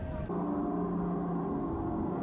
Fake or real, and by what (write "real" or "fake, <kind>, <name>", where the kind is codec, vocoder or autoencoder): real